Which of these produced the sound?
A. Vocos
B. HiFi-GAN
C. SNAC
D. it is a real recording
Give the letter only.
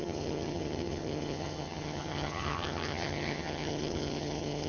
B